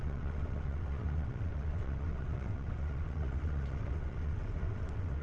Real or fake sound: fake